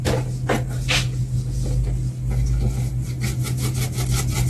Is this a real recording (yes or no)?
yes